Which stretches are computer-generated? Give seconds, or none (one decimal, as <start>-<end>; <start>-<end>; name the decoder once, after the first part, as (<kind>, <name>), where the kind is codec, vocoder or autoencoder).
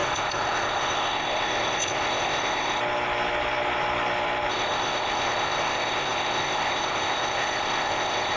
0.0-2.8 (codec, ZipCodec); 4.5-8.4